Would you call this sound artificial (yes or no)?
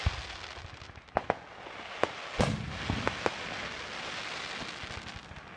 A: no